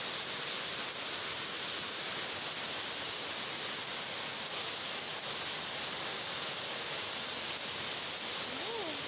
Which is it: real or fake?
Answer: real